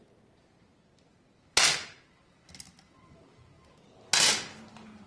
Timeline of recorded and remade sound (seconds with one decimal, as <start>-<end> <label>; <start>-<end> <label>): 0.0-5.1 recorded